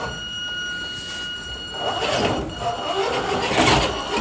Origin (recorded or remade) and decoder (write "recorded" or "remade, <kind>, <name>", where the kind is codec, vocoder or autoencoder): recorded